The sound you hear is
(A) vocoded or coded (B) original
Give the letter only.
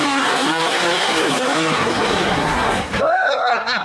A